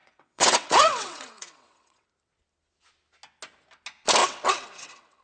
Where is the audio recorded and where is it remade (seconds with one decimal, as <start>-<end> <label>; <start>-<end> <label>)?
0.0-2.1 remade; 2.1-4.2 recorded; 4.2-5.2 remade